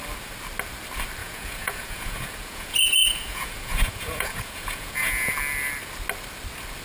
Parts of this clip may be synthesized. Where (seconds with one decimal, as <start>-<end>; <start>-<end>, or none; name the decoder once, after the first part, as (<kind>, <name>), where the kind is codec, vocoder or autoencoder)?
1.2-5.3 (vocoder, Vocos)